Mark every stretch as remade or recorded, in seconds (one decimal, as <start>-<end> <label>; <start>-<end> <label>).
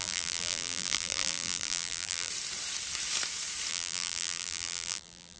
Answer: 0.0-2.3 remade; 2.3-3.7 recorded; 3.7-5.4 remade